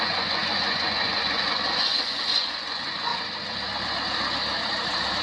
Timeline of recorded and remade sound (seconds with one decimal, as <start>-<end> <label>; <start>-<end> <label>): 0.0-3.1 remade; 3.1-5.2 recorded